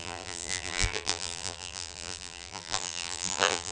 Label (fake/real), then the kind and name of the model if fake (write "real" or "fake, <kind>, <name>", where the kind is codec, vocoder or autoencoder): fake, vocoder, BigVGAN v2